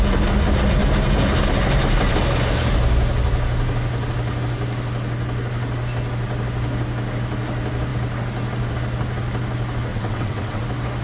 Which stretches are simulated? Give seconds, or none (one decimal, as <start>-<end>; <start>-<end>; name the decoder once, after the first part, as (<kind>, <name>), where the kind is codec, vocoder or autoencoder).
9.9-10.6 (vocoder, WaveNeXt)